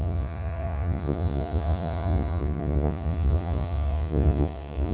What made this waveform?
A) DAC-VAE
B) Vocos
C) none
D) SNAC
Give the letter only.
B